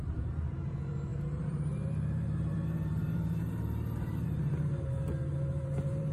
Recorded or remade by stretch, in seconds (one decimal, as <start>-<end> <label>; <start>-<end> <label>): 0.0-6.1 remade

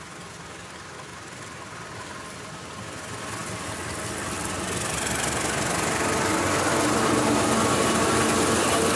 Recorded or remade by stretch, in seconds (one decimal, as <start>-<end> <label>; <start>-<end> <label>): 0.0-1.1 recorded; 1.1-3.0 remade; 3.0-3.4 recorded; 3.4-4.9 remade; 4.9-9.0 recorded

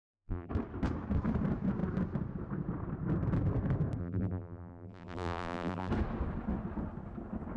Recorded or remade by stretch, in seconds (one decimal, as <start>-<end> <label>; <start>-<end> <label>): 0.0-0.5 remade; 0.5-4.0 recorded; 4.0-5.9 remade; 5.9-7.6 recorded

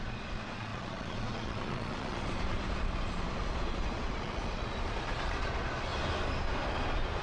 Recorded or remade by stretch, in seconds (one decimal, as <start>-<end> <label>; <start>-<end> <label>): 0.0-5.9 remade; 5.9-7.2 recorded

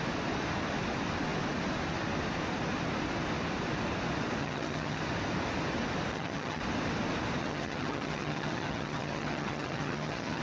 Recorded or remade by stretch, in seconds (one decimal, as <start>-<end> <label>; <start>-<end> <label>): 0.0-4.4 recorded; 4.4-5.0 remade; 5.0-6.1 recorded; 6.1-6.6 remade; 6.6-7.4 recorded; 7.4-10.4 remade

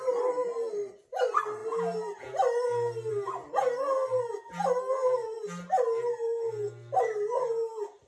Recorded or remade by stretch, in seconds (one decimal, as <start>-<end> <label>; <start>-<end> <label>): 0.0-8.1 recorded

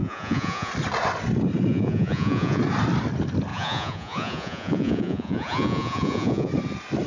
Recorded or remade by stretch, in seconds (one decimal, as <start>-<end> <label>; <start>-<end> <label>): 0.0-0.7 remade; 0.7-1.7 recorded; 1.7-2.6 remade; 2.6-3.5 recorded; 3.5-6.5 remade; 6.5-7.1 recorded

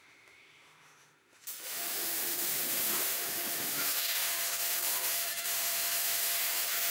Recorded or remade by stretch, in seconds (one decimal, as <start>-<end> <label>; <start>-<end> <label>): 0.0-6.9 remade